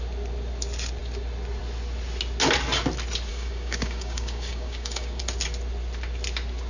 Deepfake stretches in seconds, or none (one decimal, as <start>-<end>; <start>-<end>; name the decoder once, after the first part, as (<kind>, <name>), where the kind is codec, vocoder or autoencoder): 3.3-5.2 (codec, DAC)